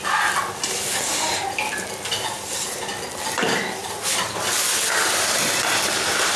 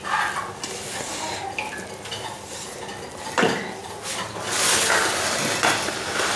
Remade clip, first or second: first